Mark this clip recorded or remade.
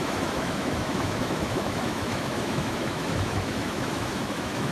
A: remade